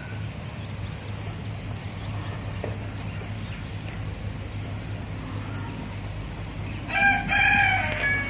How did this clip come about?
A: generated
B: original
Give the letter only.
B